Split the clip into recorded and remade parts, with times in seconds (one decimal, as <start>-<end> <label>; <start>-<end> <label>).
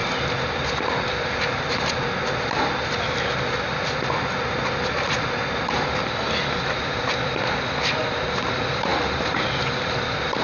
0.0-10.4 recorded